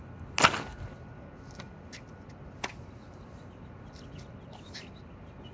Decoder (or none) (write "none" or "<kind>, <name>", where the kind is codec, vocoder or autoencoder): none